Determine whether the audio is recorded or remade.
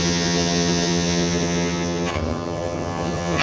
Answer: remade